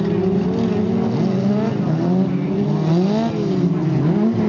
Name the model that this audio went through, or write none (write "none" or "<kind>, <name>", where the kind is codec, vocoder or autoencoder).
none